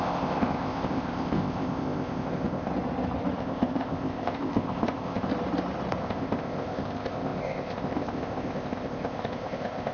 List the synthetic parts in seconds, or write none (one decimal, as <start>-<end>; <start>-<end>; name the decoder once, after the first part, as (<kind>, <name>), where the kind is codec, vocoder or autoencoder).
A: 0.0-2.7 (codec, ZipCodec); 3.4-5.3; 6.0-9.9